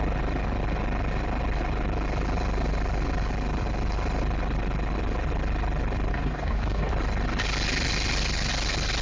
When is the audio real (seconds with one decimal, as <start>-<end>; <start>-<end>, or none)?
0.0-6.1; 6.9-9.0